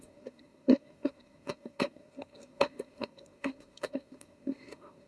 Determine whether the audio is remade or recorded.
remade